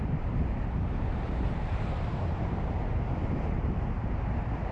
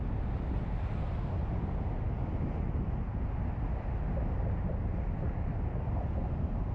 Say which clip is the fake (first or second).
first